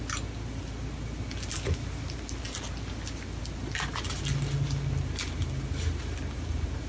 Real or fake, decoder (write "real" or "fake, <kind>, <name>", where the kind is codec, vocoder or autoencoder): real